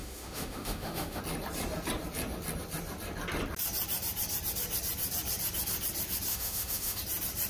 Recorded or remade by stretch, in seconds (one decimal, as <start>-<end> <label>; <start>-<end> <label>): 0.0-1.2 remade; 1.2-6.3 recorded; 6.3-7.0 remade; 7.0-7.5 recorded